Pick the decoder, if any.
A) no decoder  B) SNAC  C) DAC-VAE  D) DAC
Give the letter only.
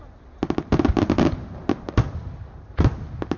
A